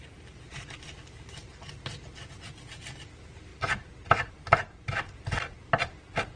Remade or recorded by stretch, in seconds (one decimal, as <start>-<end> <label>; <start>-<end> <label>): 0.0-6.4 recorded